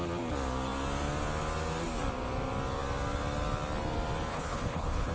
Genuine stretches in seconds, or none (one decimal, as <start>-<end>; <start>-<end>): 0.0-4.3